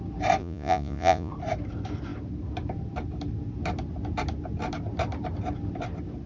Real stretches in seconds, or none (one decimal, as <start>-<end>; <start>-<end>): 0.0-0.4; 1.3-6.3